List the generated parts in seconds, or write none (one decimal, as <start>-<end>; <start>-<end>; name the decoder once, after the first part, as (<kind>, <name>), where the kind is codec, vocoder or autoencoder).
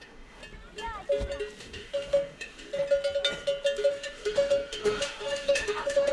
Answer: 0.0-0.4 (autoencoder, DAC-VAE); 1.6-2.7; 3.9-6.1